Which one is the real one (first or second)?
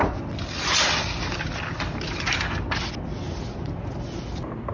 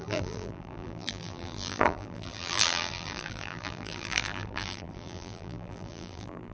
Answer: first